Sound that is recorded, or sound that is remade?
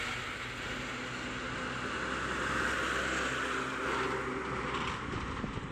recorded